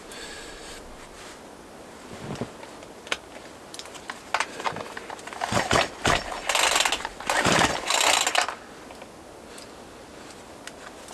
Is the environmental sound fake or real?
real